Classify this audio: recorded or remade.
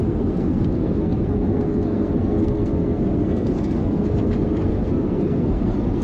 remade